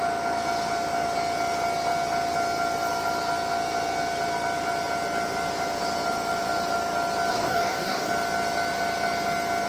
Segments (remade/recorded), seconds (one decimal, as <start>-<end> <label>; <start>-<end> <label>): 0.0-7.3 recorded; 7.3-8.1 remade; 8.1-9.7 recorded

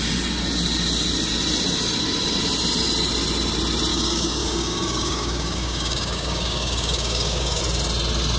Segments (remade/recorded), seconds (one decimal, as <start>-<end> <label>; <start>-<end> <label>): 0.0-3.9 recorded; 3.9-7.6 remade; 7.6-8.4 recorded